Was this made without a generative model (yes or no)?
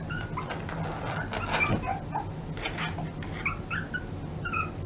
yes